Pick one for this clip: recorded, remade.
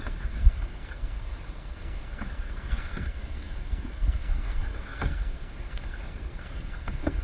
remade